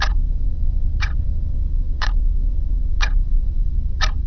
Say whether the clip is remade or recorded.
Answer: remade